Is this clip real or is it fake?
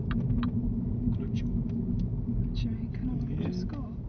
real